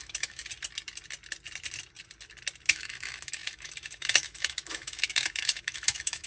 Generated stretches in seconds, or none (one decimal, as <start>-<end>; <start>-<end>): 0.0-0.4; 2.7-6.3